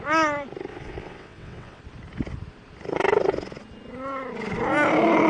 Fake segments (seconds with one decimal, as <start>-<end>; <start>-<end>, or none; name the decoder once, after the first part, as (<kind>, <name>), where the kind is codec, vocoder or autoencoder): 0.7-1.8 (vocoder, WaveNeXt)